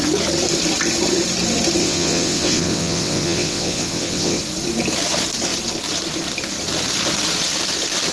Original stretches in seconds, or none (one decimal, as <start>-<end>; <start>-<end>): 0.0-1.8; 4.4-8.1